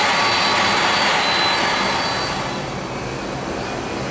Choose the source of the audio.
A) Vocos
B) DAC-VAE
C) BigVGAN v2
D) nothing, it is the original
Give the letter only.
D